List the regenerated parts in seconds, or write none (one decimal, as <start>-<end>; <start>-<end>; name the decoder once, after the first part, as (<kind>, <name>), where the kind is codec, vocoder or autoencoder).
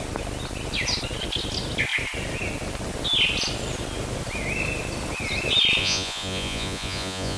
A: 5.8-7.4 (vocoder, Vocos)